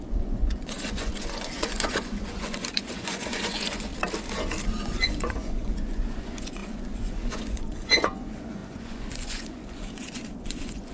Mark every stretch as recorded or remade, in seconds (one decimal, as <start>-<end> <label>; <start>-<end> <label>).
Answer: 0.0-3.9 remade; 3.9-4.8 recorded; 4.8-10.9 remade